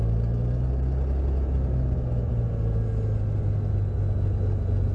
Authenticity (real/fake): real